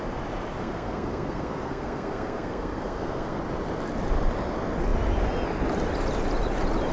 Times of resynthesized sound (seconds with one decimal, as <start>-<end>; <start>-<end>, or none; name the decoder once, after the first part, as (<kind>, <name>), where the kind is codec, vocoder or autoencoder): 0.6-3.4 (codec, SNAC)